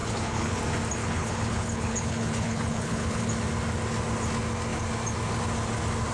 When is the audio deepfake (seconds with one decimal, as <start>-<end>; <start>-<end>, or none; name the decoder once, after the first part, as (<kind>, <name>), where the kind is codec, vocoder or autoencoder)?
0.0-0.6 (codec, HILCodec); 1.0-3.3